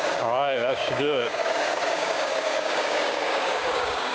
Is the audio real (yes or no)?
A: no